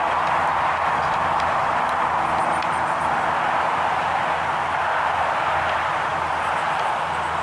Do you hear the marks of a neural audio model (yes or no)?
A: no